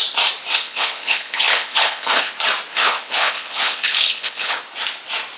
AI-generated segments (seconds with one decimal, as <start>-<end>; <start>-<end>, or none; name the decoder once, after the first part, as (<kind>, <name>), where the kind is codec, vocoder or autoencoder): 0.5-2.3 (codec, HILCodec); 2.7-4.6